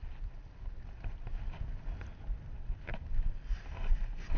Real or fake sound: real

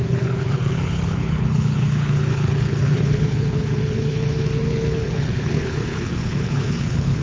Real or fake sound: fake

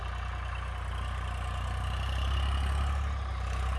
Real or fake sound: real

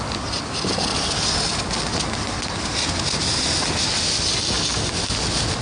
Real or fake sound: real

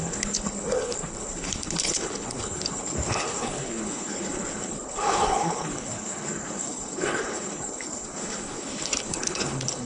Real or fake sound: fake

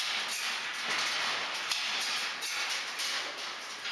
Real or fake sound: real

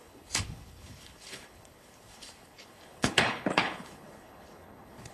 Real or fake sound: fake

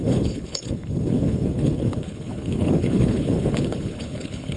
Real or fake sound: fake